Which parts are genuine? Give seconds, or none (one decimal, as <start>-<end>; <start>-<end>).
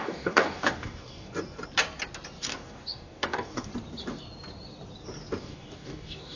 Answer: 1.3-2.5; 3.7-5.4